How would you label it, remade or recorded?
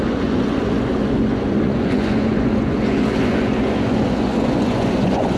remade